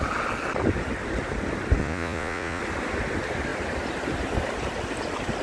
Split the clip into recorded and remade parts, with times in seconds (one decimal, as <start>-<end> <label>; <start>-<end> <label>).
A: 0.0-1.8 recorded; 1.8-2.6 remade; 2.6-5.4 recorded